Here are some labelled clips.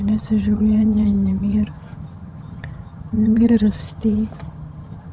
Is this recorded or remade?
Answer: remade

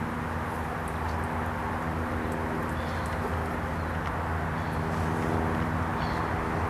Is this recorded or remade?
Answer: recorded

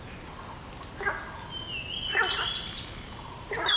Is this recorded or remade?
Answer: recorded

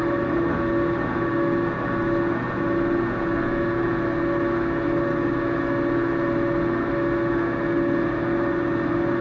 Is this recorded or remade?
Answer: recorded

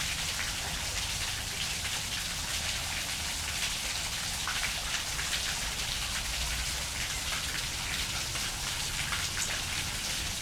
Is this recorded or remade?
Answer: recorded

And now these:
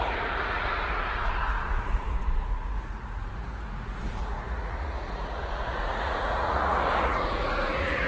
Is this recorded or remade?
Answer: remade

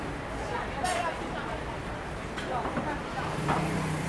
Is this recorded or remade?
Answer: remade